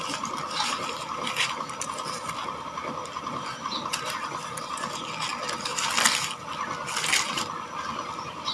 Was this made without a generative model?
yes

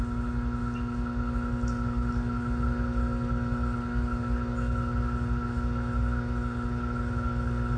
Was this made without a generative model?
yes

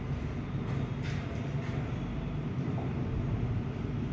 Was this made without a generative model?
yes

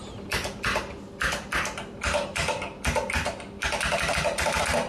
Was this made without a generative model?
yes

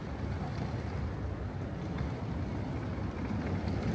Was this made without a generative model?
yes